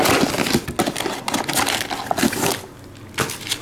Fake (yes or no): no